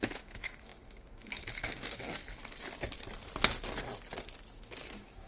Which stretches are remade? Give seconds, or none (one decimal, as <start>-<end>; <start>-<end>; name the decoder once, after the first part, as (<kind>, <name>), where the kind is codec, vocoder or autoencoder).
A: 0.0-2.4 (autoencoder, DAC-VAE); 4.5-5.3